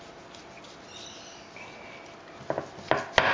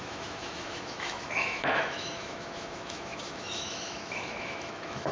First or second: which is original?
first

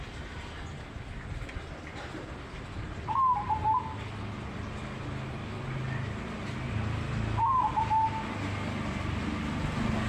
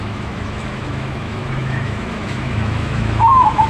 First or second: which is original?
first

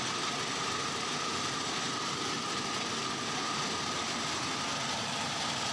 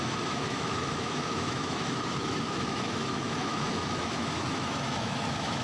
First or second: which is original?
first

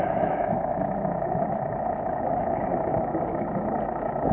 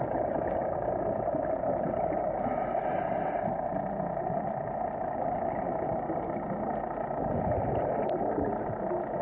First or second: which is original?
second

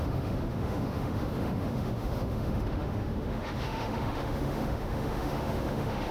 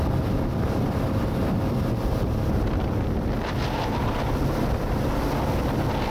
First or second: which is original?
second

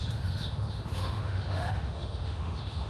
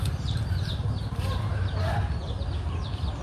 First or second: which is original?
second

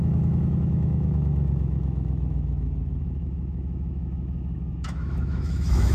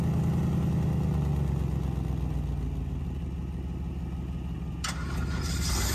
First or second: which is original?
second